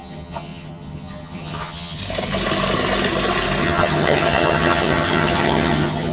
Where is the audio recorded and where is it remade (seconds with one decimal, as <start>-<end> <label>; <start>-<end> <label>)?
0.0-2.0 remade; 2.0-3.6 recorded; 3.6-6.1 remade